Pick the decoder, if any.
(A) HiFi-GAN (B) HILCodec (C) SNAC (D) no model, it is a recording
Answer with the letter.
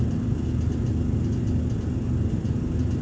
D